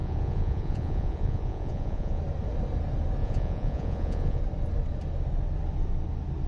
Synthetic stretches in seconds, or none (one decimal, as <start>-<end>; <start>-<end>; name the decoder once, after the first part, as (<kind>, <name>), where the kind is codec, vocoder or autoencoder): 0.0-2.2 (vocoder, Vocos); 3.2-4.4